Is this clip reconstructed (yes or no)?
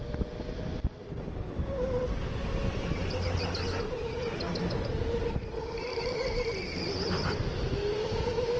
no